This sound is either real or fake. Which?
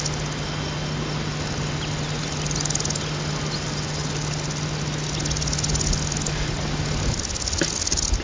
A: real